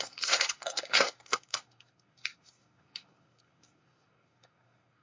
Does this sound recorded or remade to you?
remade